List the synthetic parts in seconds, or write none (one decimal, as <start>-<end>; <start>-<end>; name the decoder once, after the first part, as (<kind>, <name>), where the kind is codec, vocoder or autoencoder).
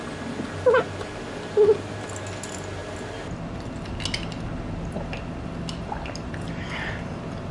none